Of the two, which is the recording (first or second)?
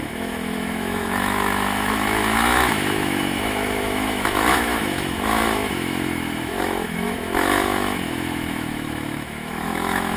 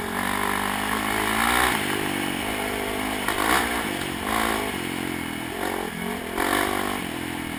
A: second